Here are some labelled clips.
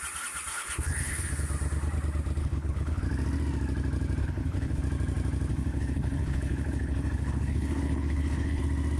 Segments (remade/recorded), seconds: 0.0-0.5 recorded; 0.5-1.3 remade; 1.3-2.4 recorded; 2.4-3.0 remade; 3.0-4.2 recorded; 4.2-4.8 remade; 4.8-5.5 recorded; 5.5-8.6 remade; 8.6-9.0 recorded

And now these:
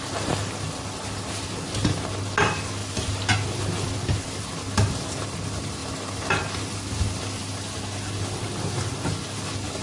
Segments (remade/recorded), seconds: 0.0-9.8 recorded

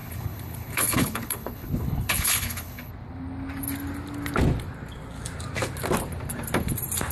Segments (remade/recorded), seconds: 0.0-2.9 remade; 2.9-7.1 recorded

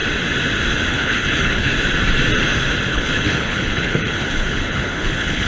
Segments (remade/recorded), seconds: 0.0-0.9 recorded; 0.9-1.7 remade; 1.7-2.9 recorded; 2.9-5.5 remade

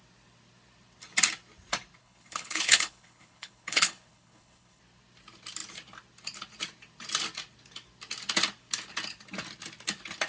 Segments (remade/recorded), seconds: 0.0-2.0 recorded; 2.0-4.8 remade; 4.8-10.3 recorded